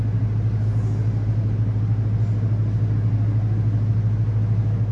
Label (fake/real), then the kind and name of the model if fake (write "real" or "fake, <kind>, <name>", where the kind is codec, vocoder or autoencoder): real